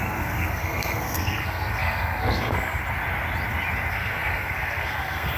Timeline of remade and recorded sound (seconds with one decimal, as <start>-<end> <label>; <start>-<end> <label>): 0.0-2.8 remade; 2.8-3.9 recorded; 3.9-5.4 remade